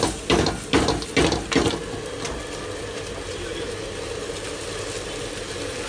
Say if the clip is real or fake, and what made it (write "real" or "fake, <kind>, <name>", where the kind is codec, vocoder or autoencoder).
real